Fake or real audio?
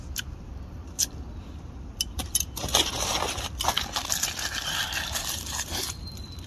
real